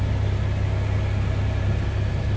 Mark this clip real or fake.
real